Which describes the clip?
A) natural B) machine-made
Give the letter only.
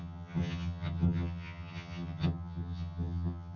B